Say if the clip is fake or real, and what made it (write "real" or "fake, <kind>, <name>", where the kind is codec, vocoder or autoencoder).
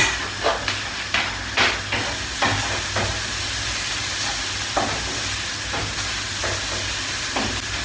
real